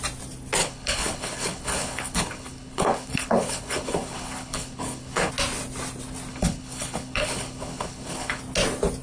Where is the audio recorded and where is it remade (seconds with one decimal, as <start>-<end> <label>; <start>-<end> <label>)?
0.0-0.6 recorded; 0.6-5.3 remade; 5.3-6.3 recorded; 6.3-8.4 remade; 8.4-9.0 recorded